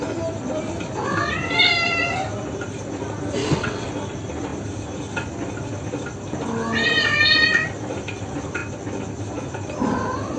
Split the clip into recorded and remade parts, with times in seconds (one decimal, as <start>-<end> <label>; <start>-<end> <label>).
0.0-3.4 recorded; 3.4-3.9 remade; 3.9-10.4 recorded